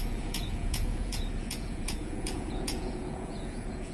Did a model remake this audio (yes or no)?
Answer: yes